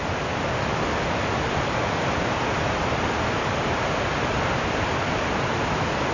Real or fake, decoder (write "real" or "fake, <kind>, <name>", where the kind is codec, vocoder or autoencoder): real